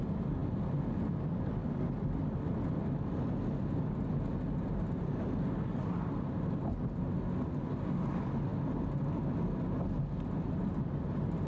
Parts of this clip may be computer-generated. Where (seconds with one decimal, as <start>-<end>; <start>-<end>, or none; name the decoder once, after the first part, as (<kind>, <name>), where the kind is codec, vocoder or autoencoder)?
none